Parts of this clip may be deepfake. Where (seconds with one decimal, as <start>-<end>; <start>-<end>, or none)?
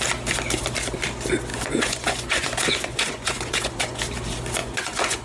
1.5-4.0; 4.6-5.2